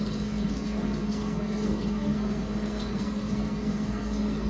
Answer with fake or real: fake